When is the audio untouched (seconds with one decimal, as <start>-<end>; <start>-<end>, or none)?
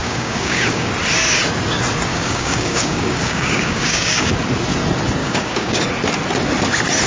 0.9-2.1; 4.3-5.2; 5.8-7.1